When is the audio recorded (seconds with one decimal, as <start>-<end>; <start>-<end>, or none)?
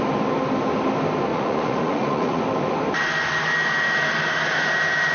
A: 0.0-1.3; 2.4-5.1